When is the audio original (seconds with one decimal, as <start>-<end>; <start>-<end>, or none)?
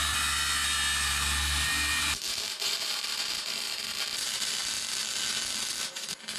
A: 0.0-2.3; 3.3-3.9; 4.5-6.4